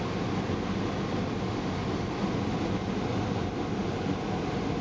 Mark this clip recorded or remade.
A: recorded